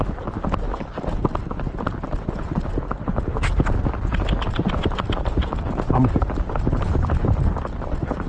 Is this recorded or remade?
recorded